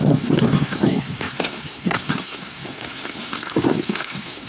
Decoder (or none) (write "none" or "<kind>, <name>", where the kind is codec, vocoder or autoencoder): codec, SNAC